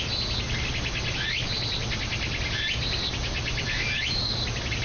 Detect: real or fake real